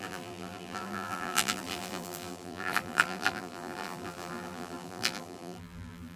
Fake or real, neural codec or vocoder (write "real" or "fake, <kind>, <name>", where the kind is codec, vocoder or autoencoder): fake, vocoder, BigVGAN v2